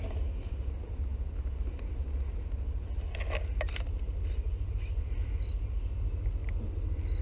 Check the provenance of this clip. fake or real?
real